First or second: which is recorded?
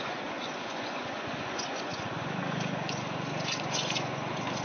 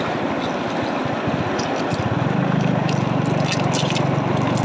second